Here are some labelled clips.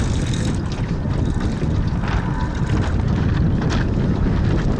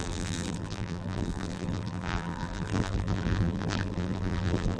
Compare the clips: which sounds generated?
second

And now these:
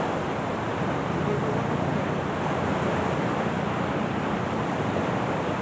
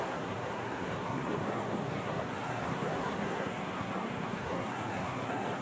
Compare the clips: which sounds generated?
second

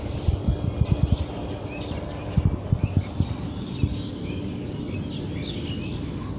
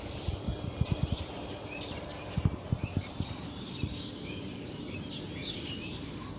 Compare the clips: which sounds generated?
second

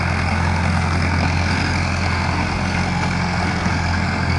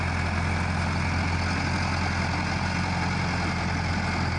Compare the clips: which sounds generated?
first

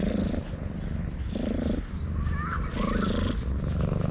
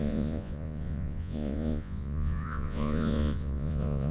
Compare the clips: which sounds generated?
second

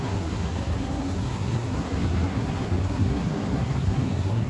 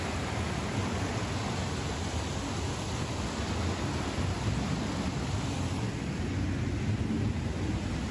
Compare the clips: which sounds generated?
first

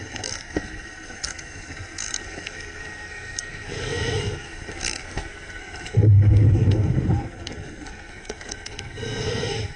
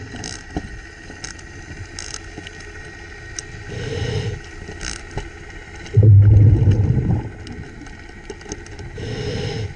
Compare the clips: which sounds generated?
first